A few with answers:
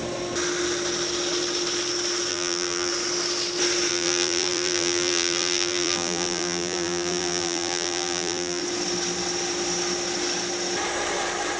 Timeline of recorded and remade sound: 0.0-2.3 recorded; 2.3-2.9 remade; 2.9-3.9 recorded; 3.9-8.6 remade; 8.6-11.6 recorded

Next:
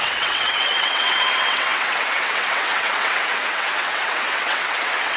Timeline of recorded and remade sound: 0.0-5.2 remade

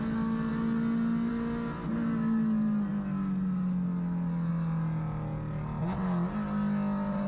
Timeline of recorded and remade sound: 0.0-7.3 recorded

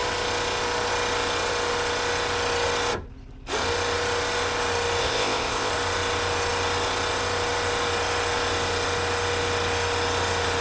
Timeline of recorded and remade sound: 0.0-5.0 recorded; 5.0-5.7 remade; 5.7-10.6 recorded

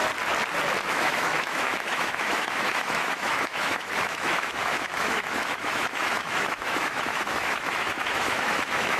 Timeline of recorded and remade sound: 0.0-0.9 recorded; 0.9-9.0 remade

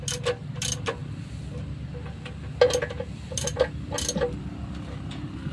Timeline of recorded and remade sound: 0.0-5.5 recorded